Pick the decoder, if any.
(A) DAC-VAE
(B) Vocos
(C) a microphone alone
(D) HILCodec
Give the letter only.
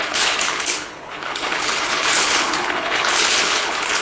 D